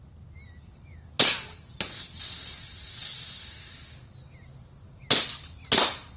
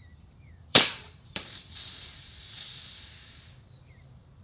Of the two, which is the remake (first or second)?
second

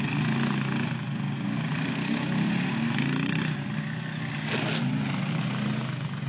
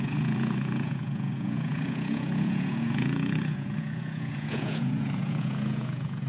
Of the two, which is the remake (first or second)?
second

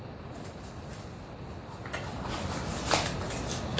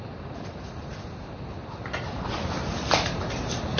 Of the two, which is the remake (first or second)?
second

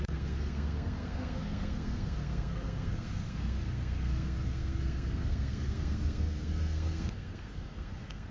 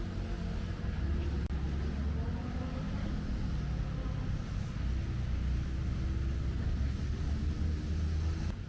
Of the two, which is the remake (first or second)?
first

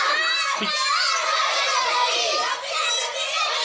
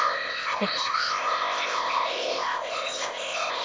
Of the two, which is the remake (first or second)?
second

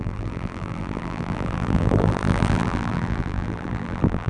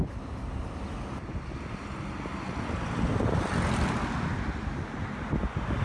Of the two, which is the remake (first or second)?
first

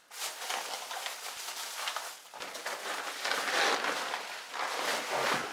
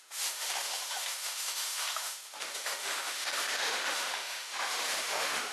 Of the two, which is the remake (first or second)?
second